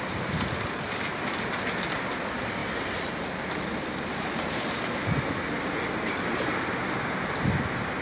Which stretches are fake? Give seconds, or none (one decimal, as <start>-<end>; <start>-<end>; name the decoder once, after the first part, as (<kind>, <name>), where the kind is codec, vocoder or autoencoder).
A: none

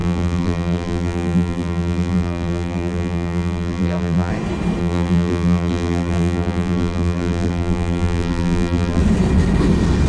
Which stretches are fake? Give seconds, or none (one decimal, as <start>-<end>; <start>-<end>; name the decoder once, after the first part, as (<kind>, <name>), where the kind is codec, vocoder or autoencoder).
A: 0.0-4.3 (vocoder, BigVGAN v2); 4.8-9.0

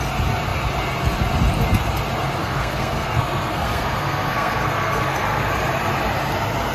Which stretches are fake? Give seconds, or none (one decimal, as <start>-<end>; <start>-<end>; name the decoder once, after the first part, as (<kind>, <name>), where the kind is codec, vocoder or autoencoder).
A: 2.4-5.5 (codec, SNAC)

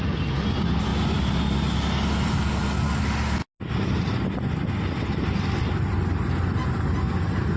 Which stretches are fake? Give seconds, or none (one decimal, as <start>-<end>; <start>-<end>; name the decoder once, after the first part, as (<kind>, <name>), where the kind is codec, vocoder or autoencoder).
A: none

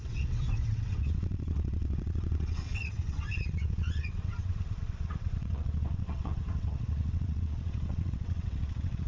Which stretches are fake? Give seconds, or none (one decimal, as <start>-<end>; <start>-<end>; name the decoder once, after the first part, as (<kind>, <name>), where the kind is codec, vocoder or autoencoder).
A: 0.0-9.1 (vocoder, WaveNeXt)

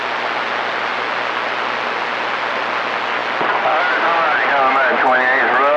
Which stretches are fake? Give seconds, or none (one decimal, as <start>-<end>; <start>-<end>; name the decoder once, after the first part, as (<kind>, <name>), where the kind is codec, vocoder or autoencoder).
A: none